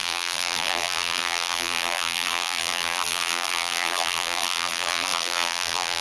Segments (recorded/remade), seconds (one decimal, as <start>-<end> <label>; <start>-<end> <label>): 0.0-6.0 remade